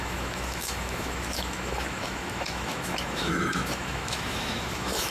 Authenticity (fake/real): fake